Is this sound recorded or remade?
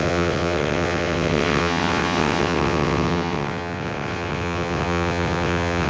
remade